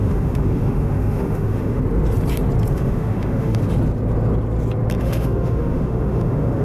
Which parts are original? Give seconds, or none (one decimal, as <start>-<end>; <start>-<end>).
1.8-2.7; 3.6-5.0